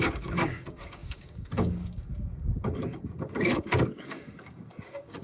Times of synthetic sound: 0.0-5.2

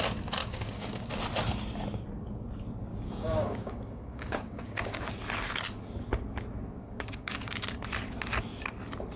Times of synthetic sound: 0.4-1.1; 2.9-5.1; 6.8-7.8

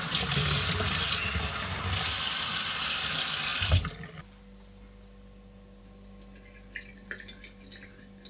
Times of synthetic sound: none

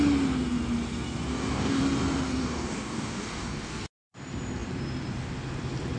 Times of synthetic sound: 1.3-1.8; 2.4-3.7

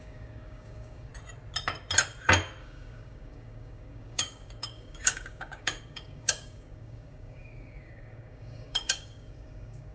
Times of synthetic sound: 0.0-1.1; 2.6-9.9

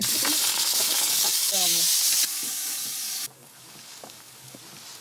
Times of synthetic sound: 0.5-1.8; 2.3-4.6

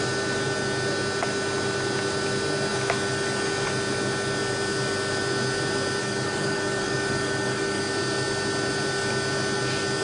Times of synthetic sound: 6.0-7.9

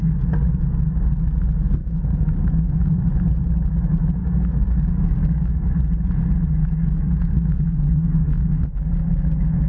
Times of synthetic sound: 1.8-3.0; 4.2-5.5; 6.6-8.8